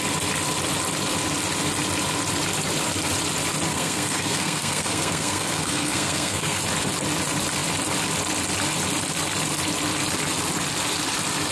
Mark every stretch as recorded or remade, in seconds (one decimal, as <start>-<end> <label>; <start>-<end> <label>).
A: 0.0-3.7 recorded; 3.7-6.6 remade; 6.6-11.5 recorded